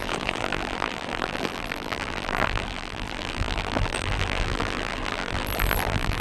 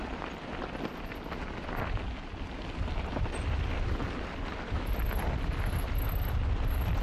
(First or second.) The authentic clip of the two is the second